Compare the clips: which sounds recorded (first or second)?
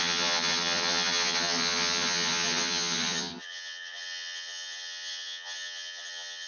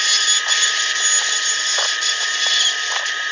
second